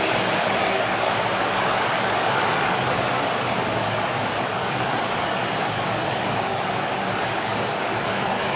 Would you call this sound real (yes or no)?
no